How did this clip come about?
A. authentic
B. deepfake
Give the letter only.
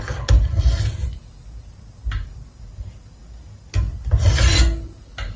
A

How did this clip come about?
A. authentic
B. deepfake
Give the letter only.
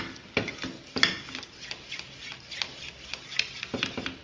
A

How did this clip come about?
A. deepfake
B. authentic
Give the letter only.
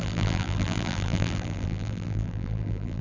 A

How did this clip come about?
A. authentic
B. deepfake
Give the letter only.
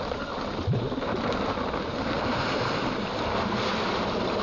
A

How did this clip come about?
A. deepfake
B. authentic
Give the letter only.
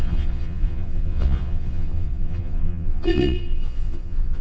A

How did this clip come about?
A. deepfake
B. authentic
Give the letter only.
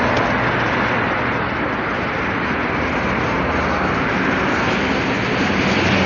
B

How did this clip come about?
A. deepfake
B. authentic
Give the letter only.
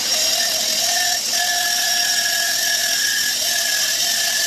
B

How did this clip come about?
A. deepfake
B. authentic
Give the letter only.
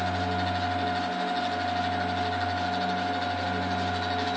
B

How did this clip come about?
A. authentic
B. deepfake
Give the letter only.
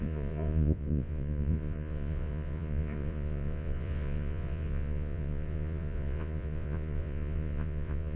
B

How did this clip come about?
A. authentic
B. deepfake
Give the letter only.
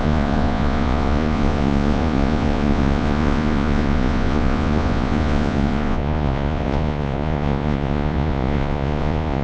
B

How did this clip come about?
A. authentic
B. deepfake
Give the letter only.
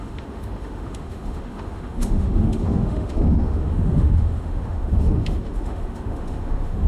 B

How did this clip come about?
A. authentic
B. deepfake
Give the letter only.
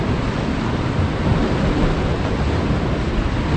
A